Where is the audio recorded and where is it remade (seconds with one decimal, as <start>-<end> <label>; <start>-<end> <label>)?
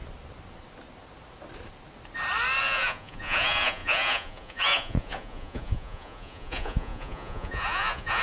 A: 0.0-2.6 recorded; 2.6-8.2 remade